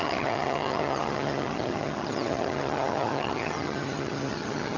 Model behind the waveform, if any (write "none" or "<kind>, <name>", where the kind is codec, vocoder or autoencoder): vocoder, HiFi-GAN